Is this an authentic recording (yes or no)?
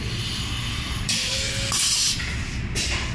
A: no